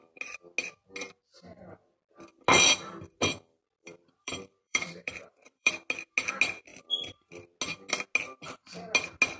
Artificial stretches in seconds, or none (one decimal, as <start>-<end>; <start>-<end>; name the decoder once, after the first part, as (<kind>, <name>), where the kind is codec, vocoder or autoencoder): 3.8-5.7 (vocoder, BigVGAN v2)